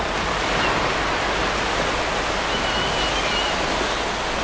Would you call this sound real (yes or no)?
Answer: yes